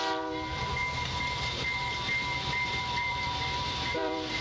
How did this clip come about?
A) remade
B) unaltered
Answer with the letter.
A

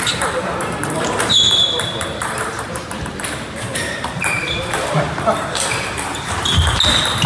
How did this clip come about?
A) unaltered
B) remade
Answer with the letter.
B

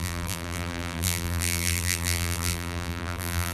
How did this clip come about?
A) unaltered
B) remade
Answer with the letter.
B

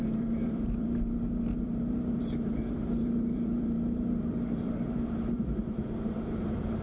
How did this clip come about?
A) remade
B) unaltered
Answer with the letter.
A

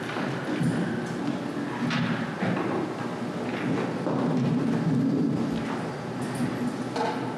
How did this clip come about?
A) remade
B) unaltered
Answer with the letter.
B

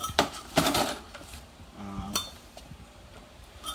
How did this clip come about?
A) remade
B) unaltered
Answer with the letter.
A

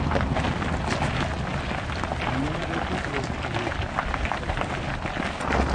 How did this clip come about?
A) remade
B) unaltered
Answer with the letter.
B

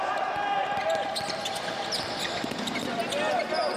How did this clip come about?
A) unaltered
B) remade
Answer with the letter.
A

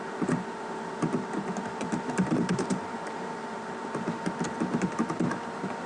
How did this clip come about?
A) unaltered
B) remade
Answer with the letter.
B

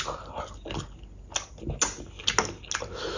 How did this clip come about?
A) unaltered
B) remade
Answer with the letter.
A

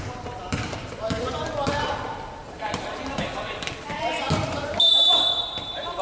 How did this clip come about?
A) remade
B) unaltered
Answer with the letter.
A